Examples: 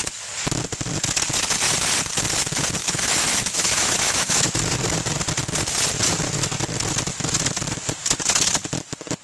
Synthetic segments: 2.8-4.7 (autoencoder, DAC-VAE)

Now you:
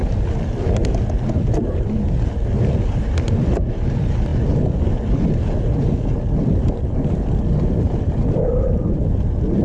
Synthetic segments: none

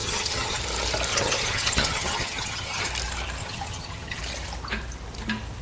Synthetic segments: 0.0-0.6 (vocoder, HiFi-GAN); 1.1-2.9; 3.4-4.2